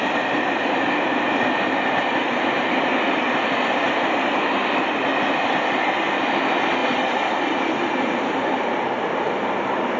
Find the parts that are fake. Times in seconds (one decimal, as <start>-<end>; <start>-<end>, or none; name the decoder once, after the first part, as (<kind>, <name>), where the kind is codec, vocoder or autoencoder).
none